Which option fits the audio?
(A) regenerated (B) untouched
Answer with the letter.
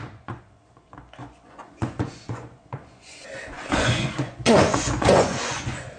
A